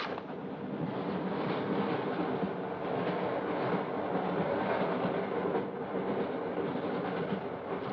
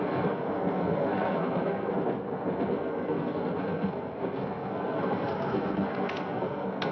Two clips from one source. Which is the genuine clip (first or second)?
first